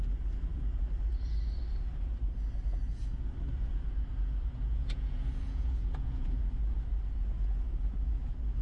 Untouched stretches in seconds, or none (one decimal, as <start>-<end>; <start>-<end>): 0.0-4.7; 6.4-8.6